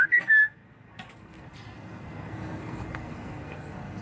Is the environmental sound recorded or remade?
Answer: remade